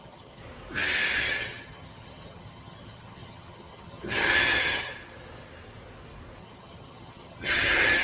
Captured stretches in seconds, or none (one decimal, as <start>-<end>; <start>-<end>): 0.4-1.1; 4.9-6.4